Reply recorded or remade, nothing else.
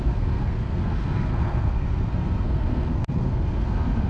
remade